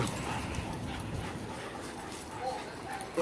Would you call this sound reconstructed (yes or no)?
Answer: no